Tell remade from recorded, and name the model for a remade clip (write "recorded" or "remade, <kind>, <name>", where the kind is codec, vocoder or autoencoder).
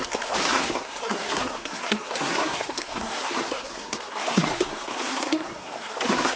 remade, codec, SNAC